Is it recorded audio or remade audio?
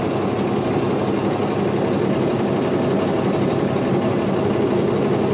recorded